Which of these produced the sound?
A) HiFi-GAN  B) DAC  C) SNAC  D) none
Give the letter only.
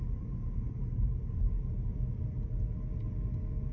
D